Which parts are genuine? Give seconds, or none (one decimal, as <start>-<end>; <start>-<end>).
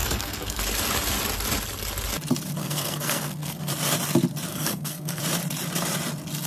0.6-2.6; 3.7-4.5; 5.2-6.5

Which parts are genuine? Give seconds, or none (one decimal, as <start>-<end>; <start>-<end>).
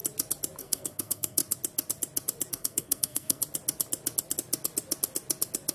0.0-0.6; 1.4-2.5; 3.4-5.7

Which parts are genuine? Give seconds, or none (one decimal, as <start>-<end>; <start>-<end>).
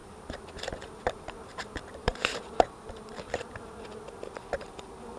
none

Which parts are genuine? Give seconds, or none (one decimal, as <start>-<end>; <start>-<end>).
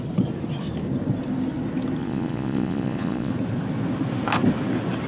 0.0-2.0; 3.3-5.1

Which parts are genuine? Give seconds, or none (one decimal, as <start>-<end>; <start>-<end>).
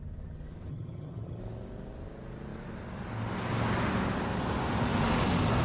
0.0-0.7; 1.4-5.6